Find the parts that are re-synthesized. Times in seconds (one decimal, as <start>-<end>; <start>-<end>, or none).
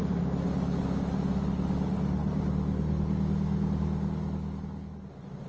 none